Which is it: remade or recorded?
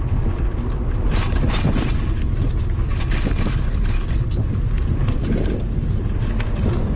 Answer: recorded